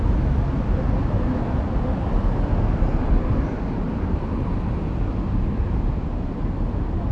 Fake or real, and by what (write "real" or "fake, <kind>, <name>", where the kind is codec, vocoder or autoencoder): real